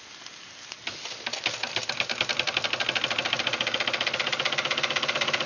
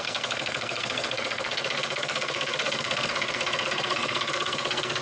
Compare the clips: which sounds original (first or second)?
first